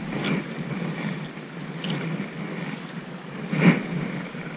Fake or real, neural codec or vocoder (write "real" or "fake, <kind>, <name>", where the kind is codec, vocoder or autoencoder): real